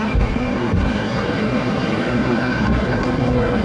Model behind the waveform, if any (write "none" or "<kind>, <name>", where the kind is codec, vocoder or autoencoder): codec, SNAC